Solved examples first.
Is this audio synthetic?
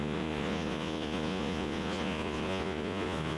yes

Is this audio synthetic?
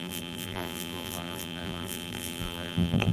yes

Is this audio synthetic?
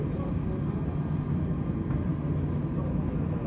no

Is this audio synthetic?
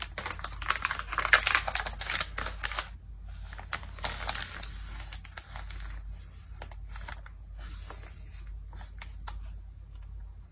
no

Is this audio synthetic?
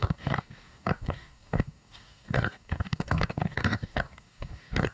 yes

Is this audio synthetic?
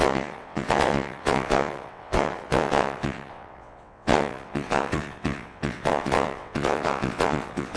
yes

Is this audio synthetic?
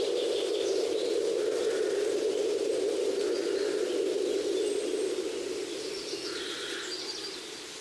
no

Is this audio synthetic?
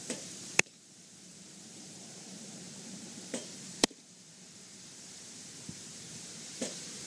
yes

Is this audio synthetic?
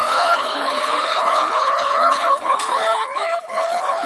yes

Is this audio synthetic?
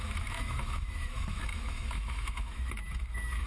yes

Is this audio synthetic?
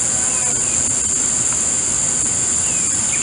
no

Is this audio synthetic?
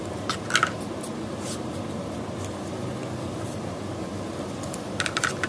no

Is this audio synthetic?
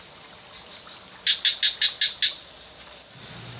no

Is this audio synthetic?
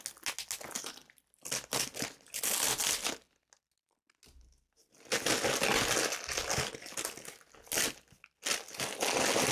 no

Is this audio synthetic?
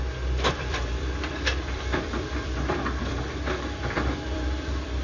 yes